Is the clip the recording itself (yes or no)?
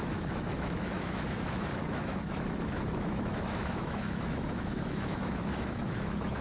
no